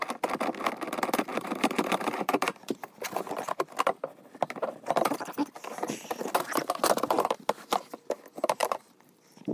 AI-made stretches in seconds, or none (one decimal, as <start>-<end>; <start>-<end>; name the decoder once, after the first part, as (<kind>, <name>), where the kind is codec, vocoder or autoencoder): 1.3-3.0 (vocoder, BigVGAN v2); 8.6-9.5